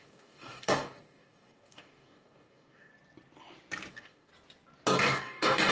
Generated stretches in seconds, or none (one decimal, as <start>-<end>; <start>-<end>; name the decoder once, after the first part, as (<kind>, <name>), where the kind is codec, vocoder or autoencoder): 0.0-2.9 (codec, DAC); 3.9-4.3; 5.0-5.7